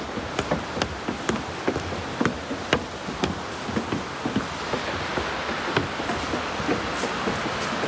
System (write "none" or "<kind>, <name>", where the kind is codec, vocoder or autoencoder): none